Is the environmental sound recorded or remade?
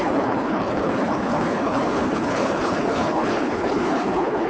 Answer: remade